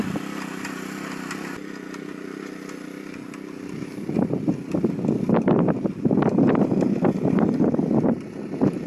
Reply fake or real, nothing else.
real